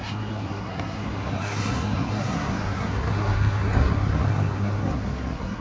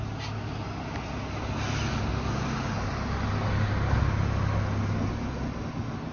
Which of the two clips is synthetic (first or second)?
first